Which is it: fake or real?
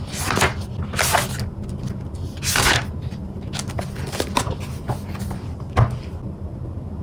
real